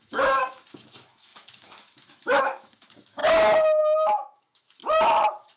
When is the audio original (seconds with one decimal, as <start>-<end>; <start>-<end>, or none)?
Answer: 3.2-3.8; 4.8-5.6